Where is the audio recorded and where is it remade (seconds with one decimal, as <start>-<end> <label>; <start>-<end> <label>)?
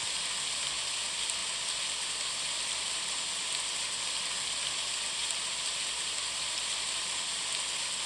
0.0-5.2 recorded; 5.2-7.1 remade; 7.1-8.1 recorded